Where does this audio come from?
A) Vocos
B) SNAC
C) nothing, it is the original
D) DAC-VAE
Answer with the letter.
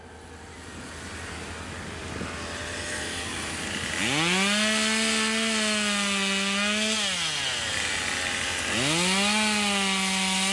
C